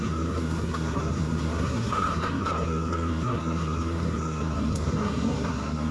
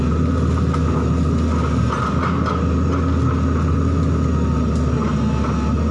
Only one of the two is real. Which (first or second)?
second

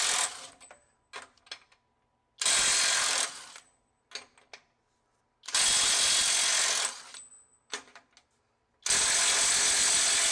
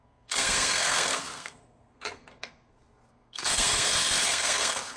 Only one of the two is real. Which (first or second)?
first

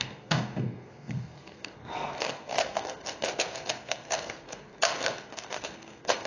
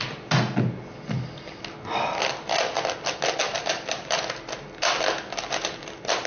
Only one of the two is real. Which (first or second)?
second